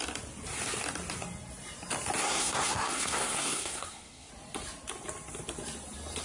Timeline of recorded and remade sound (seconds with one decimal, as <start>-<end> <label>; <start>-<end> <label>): 0.0-2.2 recorded; 2.2-4.3 remade; 4.3-6.2 recorded